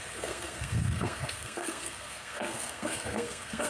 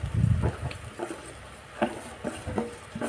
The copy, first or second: first